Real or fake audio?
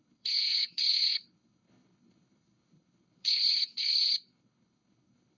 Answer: fake